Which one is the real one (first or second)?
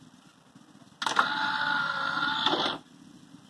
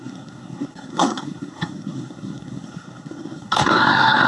first